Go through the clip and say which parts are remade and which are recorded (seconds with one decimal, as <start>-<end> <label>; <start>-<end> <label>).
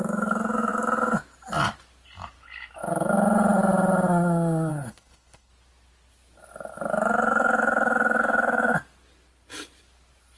0.0-4.7 recorded; 4.7-5.5 remade; 5.5-10.4 recorded